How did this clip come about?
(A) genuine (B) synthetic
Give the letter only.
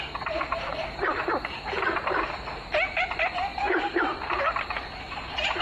B